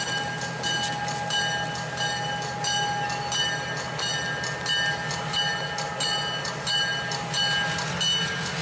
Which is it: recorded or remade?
recorded